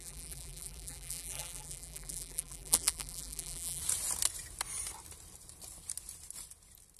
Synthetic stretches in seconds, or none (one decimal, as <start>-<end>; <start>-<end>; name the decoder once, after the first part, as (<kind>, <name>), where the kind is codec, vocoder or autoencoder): 0.0-3.8 (vocoder, BigVGAN v2)